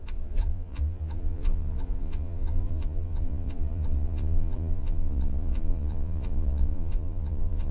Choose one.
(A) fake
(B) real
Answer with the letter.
A